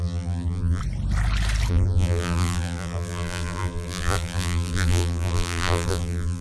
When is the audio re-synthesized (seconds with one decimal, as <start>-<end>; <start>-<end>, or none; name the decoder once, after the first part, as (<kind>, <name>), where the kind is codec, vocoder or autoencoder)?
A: 0.0-0.8 (vocoder, BigVGAN v2); 1.7-6.4